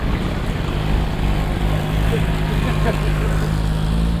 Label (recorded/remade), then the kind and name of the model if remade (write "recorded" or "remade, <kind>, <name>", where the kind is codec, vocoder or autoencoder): recorded